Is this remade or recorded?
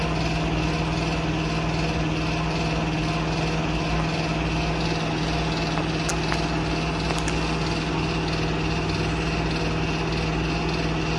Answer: recorded